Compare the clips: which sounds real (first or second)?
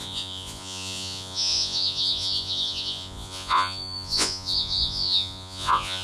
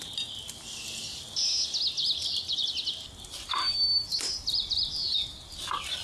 second